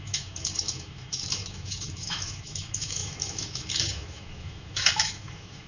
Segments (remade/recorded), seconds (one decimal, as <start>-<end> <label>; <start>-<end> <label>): 0.0-5.7 remade